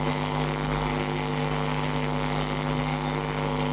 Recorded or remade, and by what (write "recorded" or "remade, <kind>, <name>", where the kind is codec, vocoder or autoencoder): remade, codec, SNAC